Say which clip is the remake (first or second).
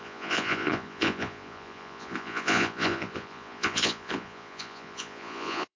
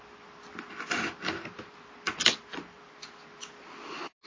first